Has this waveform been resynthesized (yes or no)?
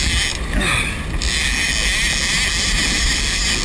no